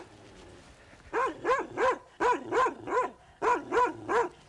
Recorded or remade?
recorded